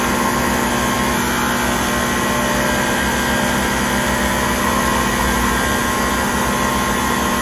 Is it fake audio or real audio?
real